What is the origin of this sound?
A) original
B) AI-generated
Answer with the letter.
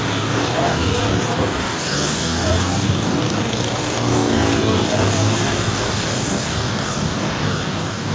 B